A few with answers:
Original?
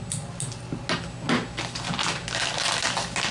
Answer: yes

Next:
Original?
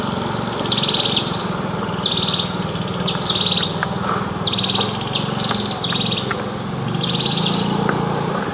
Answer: yes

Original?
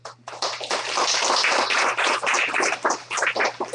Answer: yes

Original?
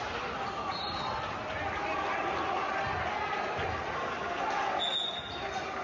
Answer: yes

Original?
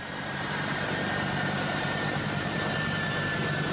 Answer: no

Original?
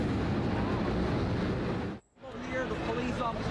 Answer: yes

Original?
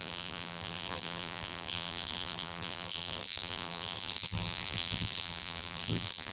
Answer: no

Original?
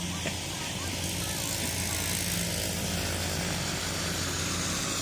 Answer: yes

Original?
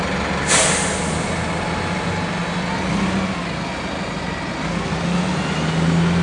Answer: yes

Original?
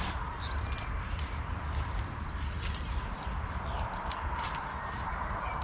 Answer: yes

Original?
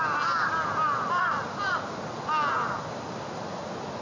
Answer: yes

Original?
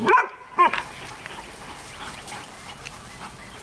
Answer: no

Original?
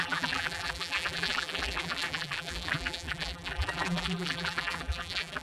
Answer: no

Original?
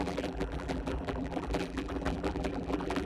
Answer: no